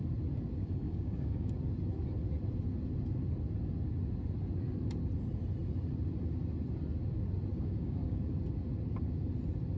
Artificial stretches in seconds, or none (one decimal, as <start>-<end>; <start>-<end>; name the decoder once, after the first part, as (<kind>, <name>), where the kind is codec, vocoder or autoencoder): 0.6-1.5 (codec, DAC); 7.5-8.2